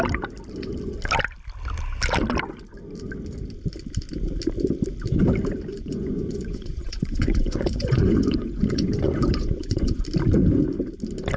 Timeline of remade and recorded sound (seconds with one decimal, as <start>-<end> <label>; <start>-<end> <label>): 0.0-5.7 recorded; 5.7-10.0 remade; 10.0-11.4 recorded